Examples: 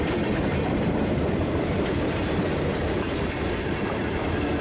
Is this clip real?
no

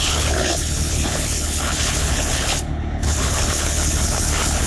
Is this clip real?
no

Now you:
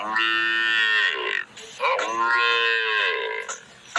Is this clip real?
yes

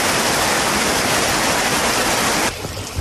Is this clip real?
yes